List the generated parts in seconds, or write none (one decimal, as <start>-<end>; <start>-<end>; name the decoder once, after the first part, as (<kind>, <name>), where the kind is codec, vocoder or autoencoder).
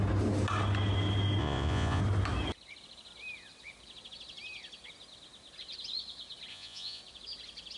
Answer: 1.4-2.0 (vocoder, Vocos); 6.5-7.0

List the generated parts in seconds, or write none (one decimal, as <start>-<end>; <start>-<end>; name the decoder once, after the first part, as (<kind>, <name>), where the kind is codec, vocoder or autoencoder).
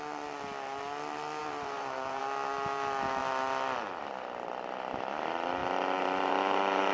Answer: 1.4-2.2 (vocoder, BigVGAN v2)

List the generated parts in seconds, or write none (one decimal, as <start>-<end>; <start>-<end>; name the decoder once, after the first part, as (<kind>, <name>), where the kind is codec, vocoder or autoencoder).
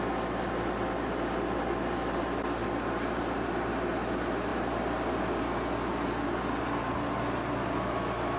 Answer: none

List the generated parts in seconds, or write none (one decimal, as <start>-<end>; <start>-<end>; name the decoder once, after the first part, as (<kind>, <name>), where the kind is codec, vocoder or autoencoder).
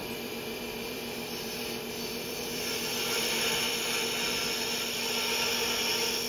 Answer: 0.0-3.8 (vocoder, BigVGAN v2)